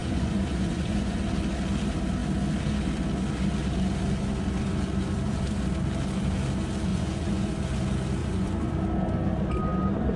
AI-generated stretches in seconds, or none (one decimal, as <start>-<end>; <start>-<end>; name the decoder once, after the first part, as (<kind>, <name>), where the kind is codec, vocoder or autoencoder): 0.0-1.2 (vocoder, Vocos); 6.9-7.5; 8.2-8.8